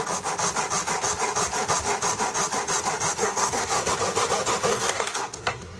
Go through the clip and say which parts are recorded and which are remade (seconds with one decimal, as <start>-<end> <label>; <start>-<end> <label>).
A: 0.0-3.2 recorded; 3.2-3.9 remade; 3.9-4.7 recorded; 4.7-5.8 remade